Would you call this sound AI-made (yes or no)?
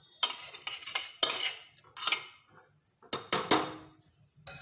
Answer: no